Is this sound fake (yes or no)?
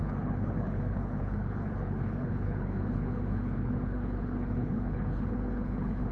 yes